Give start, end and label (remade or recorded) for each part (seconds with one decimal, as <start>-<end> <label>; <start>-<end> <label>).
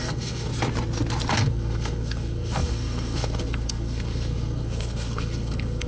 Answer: 0.0-0.5 remade; 0.5-1.3 recorded; 1.3-5.9 remade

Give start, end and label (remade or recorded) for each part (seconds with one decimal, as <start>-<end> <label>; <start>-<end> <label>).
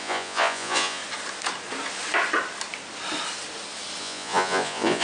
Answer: 0.0-1.0 remade; 1.0-4.0 recorded; 4.0-5.0 remade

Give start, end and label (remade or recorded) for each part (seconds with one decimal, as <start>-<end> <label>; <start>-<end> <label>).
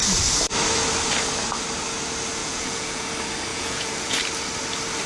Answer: 0.0-2.4 recorded; 2.4-3.0 remade; 3.0-3.5 recorded; 3.5-4.2 remade; 4.2-5.1 recorded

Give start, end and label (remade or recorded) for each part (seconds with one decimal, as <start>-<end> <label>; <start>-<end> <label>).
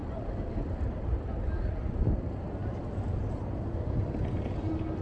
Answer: 0.0-5.0 recorded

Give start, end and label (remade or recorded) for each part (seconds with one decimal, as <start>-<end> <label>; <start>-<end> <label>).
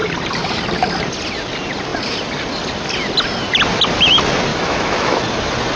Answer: 0.0-4.5 recorded; 4.5-5.2 remade; 5.2-5.8 recorded